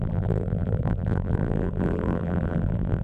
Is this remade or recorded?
remade